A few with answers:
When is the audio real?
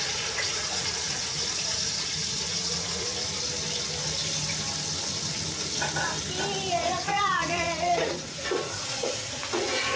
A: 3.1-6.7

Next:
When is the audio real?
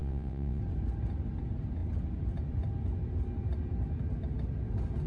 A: 0.6-5.1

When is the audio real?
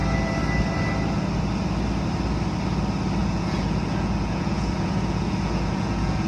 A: 0.0-3.2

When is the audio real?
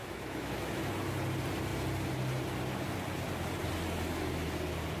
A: 0.9-5.0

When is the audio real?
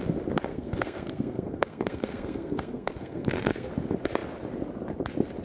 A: 0.0-0.5; 3.7-5.4